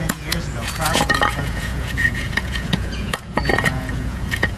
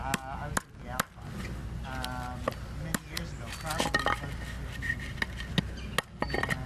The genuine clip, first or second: second